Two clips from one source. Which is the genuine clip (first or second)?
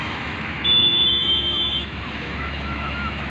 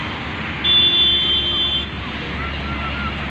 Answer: second